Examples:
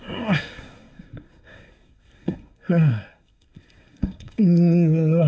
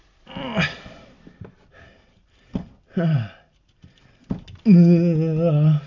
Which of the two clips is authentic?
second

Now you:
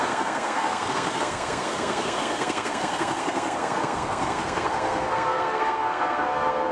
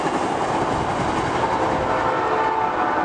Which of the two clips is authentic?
second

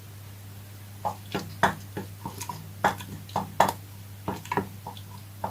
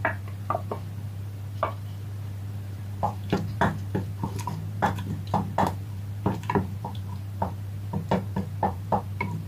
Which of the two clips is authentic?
first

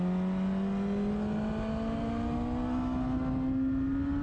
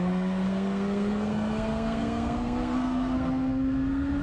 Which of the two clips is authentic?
first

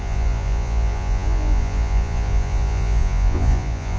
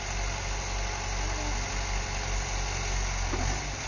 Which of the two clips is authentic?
second